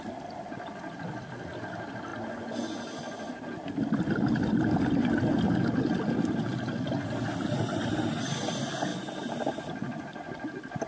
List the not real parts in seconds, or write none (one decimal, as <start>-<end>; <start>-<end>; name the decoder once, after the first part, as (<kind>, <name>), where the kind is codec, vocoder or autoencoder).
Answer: 0.0-2.1 (vocoder, BigVGAN v2); 6.1-8.9; 9.5-10.9